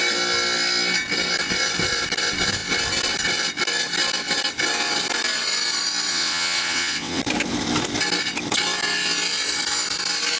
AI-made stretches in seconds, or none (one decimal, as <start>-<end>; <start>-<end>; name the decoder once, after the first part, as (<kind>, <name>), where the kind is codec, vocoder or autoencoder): 6.1-7.2 (vocoder, WaveNeXt)